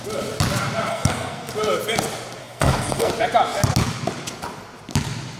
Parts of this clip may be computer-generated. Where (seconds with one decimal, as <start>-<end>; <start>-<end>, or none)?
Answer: 0.9-1.5; 2.4-3.1